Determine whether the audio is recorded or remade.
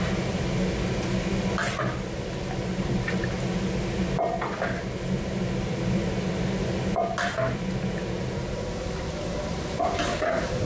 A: recorded